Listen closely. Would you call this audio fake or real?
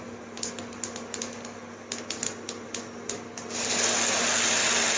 real